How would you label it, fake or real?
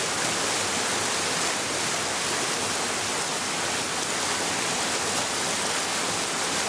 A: real